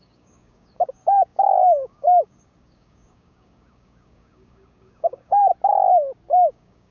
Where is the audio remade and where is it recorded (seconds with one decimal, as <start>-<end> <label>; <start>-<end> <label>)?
0.0-5.5 remade; 5.5-6.5 recorded; 6.5-6.9 remade